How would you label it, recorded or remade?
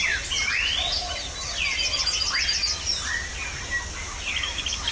recorded